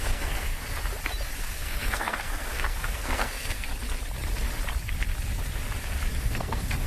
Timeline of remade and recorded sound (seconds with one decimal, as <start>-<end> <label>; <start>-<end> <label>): 0.0-0.6 remade; 0.6-1.4 recorded; 1.4-3.7 remade; 3.7-6.2 recorded; 6.2-6.9 remade